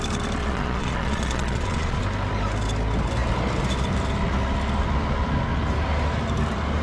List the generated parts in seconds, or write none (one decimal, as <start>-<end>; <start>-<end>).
0.4-2.0